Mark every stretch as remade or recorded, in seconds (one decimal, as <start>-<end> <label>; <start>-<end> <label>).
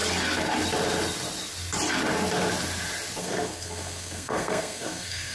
0.0-3.2 recorded; 3.2-5.3 remade